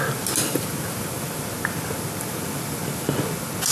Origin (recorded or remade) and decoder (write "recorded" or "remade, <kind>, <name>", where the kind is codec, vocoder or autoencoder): recorded